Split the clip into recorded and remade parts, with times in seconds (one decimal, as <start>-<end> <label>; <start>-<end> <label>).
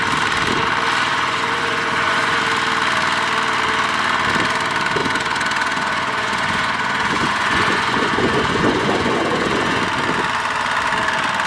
0.0-1.1 recorded; 1.1-2.4 remade; 2.4-5.0 recorded; 5.0-9.8 remade; 9.8-11.5 recorded